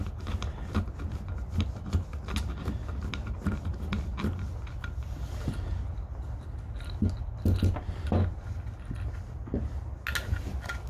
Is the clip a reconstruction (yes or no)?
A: no